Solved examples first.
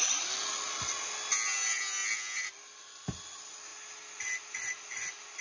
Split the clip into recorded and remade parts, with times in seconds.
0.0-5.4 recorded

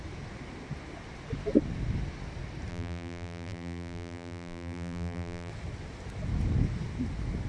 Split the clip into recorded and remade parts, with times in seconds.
0.0-2.7 recorded; 2.7-5.5 remade; 5.5-7.5 recorded

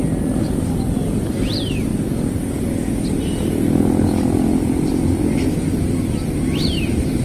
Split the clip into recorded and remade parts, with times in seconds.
0.0-7.2 recorded

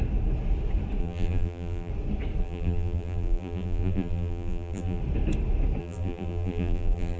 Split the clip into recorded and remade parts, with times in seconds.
0.0-1.0 recorded; 1.0-1.9 remade; 1.9-2.4 recorded; 2.4-5.0 remade; 5.0-5.8 recorded; 5.8-7.2 remade